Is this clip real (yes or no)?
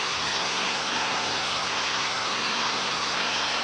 no